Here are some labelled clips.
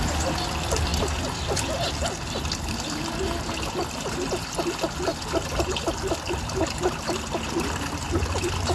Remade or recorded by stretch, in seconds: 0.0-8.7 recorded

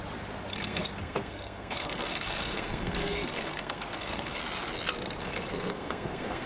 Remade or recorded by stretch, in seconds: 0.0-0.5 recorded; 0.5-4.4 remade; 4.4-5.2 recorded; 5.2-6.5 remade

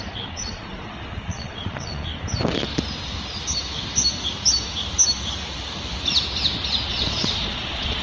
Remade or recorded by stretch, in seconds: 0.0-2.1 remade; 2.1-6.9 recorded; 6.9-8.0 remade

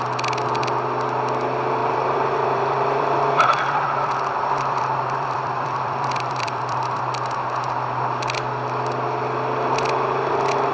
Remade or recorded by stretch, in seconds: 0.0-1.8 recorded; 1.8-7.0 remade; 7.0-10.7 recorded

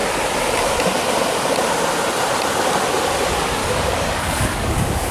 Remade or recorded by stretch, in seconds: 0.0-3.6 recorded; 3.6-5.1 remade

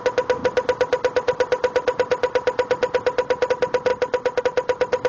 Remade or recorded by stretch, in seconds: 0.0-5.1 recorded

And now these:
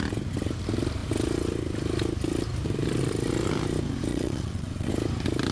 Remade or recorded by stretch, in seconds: 0.0-4.1 recorded; 4.1-4.9 remade; 4.9-5.5 recorded

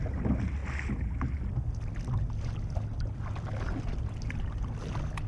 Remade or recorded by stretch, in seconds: 0.0-5.3 recorded